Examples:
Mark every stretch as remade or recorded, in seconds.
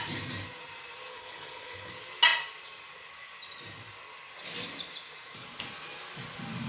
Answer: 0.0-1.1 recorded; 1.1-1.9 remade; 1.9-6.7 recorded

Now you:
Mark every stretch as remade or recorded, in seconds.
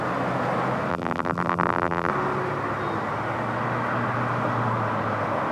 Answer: 0.0-0.9 recorded; 0.9-2.1 remade; 2.1-5.5 recorded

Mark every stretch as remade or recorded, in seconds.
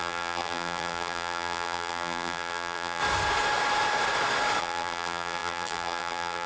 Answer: 0.0-3.0 remade; 3.0-4.6 recorded; 4.6-6.5 remade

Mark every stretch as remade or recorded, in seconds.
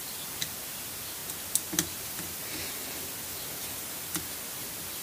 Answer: 0.0-0.6 remade; 0.6-5.0 recorded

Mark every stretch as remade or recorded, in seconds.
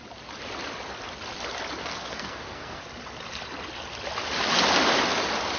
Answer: 0.0-1.8 recorded; 1.8-2.8 remade; 2.8-5.6 recorded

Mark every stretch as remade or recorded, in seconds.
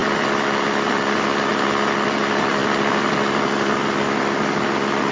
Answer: 0.0-5.1 recorded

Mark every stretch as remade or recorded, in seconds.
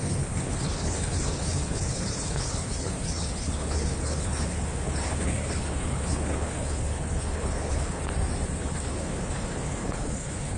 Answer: 0.0-8.0 remade; 8.0-8.6 recorded; 8.6-10.6 remade